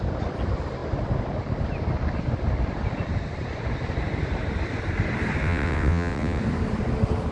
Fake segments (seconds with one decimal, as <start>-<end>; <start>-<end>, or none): 5.4-6.4